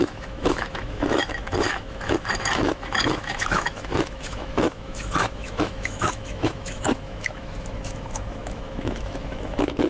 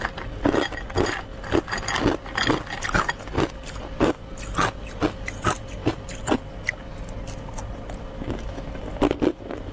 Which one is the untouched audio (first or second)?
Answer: second